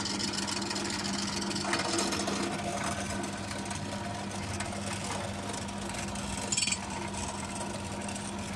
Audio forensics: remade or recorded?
recorded